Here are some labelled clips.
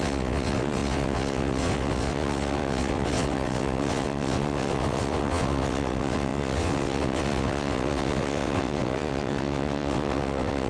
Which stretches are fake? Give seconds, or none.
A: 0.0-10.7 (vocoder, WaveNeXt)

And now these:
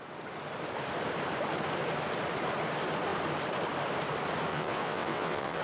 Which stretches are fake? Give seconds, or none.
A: 4.5-5.6 (vocoder, WaveNeXt)

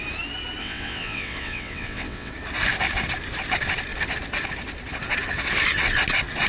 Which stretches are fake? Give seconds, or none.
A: 0.6-2.3 (vocoder, WaveNeXt)

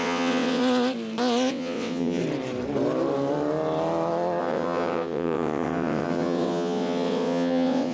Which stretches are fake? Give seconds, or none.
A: 0.0-0.6 (vocoder, WaveNeXt); 1.5-2.2; 4.4-7.9

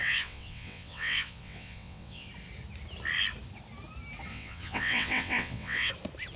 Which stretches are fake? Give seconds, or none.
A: 0.0-2.3 (vocoder, WaveNeXt); 4.3-5.9